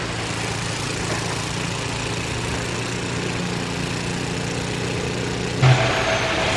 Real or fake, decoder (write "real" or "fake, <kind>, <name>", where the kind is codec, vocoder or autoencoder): real